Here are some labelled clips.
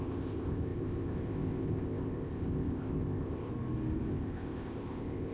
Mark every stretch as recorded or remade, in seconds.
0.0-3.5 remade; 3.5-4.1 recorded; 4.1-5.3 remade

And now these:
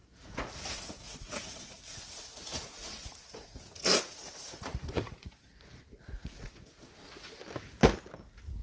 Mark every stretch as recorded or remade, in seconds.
0.0-7.4 remade; 7.4-8.6 recorded

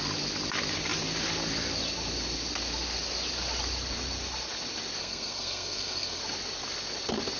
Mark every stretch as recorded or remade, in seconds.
0.0-5.0 recorded; 5.0-6.2 remade; 6.2-7.4 recorded